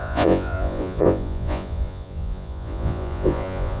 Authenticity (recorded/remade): remade